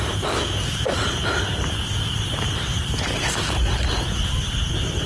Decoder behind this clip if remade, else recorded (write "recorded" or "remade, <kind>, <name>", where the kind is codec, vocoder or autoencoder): recorded